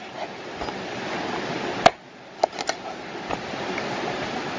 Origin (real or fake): real